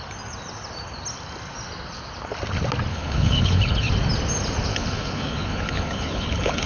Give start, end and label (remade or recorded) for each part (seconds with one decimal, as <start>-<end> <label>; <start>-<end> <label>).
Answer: 0.0-2.9 recorded; 2.9-3.9 remade; 3.9-4.7 recorded; 4.7-6.7 remade